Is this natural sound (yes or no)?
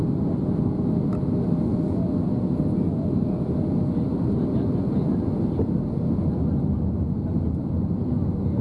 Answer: yes